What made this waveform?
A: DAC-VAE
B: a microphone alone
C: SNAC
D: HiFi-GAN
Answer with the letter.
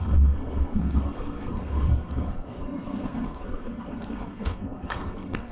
C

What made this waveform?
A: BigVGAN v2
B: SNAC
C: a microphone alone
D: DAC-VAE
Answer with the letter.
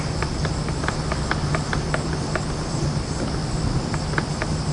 C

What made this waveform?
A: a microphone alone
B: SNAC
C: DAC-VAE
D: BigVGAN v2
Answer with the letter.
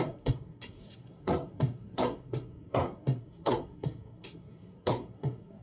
B